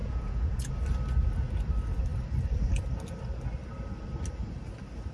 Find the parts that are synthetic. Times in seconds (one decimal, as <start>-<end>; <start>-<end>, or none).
0.0-0.7